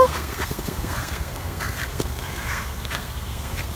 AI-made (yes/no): yes